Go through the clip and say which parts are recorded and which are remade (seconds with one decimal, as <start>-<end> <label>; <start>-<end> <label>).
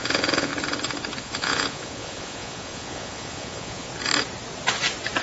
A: 0.0-0.5 remade; 0.5-1.2 recorded; 1.2-3.9 remade; 3.9-5.2 recorded